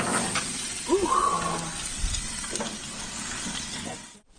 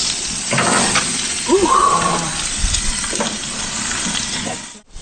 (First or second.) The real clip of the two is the first